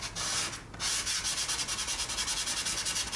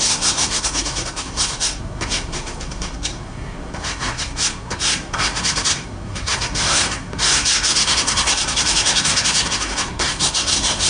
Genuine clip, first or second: first